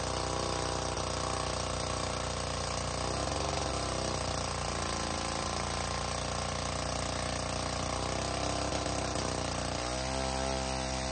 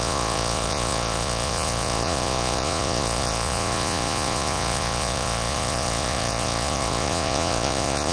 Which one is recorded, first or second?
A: first